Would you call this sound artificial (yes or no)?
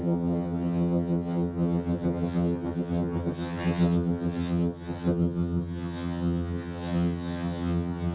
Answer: yes